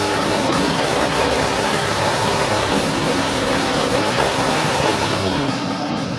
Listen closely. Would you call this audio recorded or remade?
remade